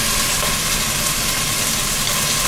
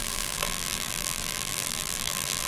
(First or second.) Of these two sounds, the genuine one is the first